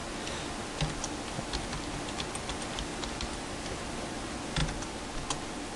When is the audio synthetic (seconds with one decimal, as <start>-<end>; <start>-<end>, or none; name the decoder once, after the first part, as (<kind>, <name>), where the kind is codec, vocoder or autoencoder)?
none